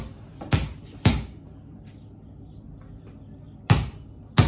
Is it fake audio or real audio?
real